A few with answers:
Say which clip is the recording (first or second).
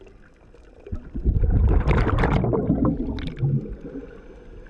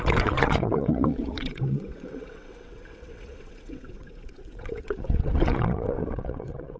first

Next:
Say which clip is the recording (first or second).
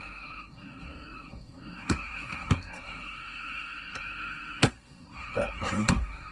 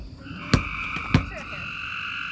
second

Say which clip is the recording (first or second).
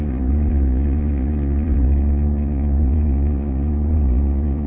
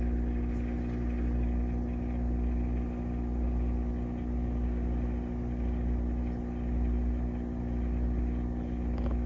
second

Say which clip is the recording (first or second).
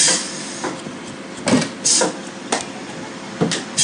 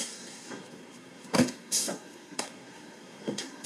first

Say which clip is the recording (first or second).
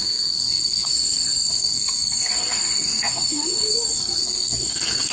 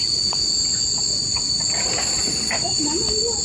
second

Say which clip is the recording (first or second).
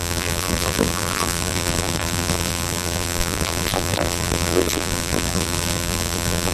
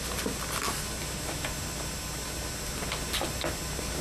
second